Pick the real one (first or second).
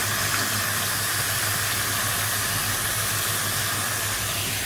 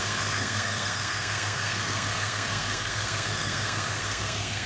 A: first